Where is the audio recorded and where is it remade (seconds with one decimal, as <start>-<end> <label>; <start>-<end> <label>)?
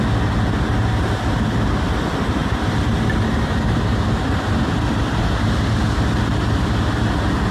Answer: 0.0-2.4 recorded; 2.4-2.9 remade; 2.9-7.5 recorded